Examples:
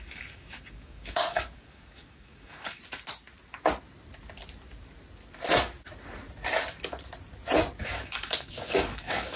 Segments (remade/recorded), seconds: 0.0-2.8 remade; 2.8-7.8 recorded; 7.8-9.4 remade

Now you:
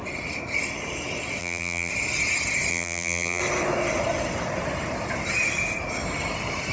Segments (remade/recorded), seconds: 0.0-1.4 recorded; 1.4-1.9 remade; 1.9-2.7 recorded; 2.7-3.4 remade; 3.4-6.7 recorded

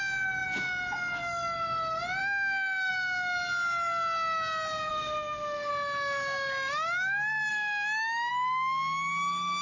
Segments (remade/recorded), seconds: 0.0-2.2 recorded; 2.2-2.9 remade; 2.9-4.9 recorded; 4.9-5.7 remade; 5.7-7.5 recorded; 7.5-8.3 remade; 8.3-9.6 recorded

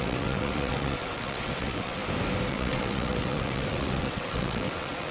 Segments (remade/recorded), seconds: 0.0-2.0 remade; 2.0-2.5 recorded; 2.5-5.1 remade

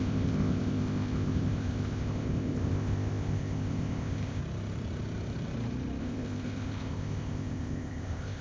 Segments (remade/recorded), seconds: 0.0-4.4 remade; 4.4-6.0 recorded; 6.0-8.4 remade

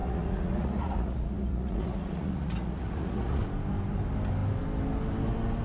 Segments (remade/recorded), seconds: 0.0-3.4 remade; 3.4-5.6 recorded

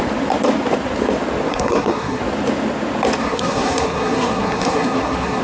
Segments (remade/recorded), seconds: 0.0-1.5 recorded; 1.5-2.2 remade; 2.2-3.2 recorded; 3.2-5.4 remade